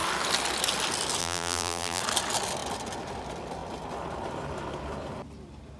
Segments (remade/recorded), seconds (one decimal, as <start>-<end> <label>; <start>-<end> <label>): 0.0-1.2 recorded; 1.2-2.0 remade; 2.0-5.8 recorded